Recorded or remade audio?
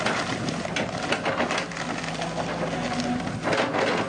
recorded